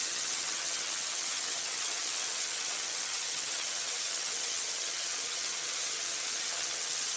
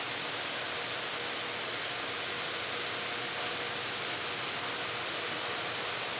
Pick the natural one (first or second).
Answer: second